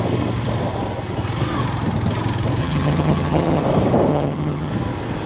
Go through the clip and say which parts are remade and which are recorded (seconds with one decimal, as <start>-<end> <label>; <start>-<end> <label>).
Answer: 0.0-2.6 recorded; 2.6-3.6 remade; 3.6-4.1 recorded; 4.1-4.7 remade; 4.7-5.3 recorded